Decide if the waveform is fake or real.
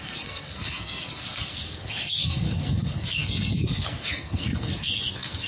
fake